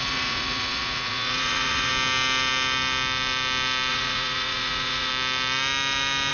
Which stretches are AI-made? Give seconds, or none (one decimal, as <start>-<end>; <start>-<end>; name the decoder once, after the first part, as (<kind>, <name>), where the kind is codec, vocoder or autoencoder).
0.0-1.9 (vocoder, Vocos); 3.9-5.1